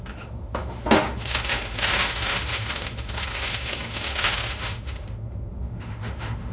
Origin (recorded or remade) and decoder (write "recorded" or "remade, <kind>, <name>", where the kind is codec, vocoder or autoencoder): remade, autoencoder, DAC-VAE